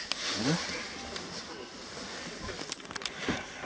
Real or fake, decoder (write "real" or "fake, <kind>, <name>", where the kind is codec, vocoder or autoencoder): real